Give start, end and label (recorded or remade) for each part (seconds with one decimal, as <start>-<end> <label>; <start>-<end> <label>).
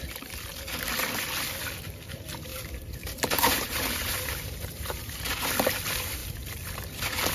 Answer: 0.0-2.5 recorded; 2.5-5.5 remade; 5.5-7.3 recorded